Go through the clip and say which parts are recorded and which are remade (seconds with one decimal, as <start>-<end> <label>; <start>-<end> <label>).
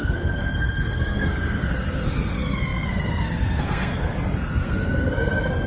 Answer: 0.0-5.7 remade